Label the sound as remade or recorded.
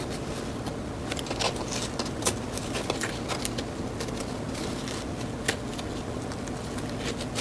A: recorded